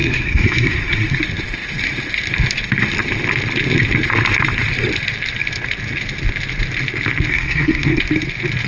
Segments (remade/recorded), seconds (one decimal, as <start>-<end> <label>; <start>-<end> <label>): 0.0-1.2 remade; 1.2-7.3 recorded; 7.3-8.0 remade; 8.0-8.7 recorded